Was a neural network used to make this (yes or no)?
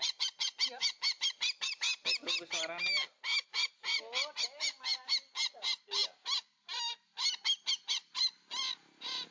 no